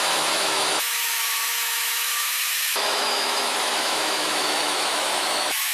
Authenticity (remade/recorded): remade